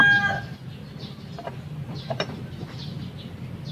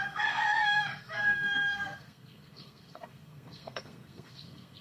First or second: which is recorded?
first